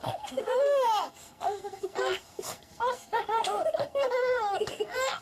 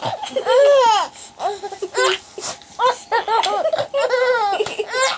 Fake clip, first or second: first